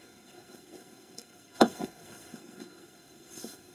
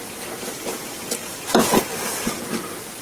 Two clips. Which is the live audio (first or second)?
second